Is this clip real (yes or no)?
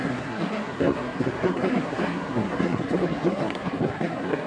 no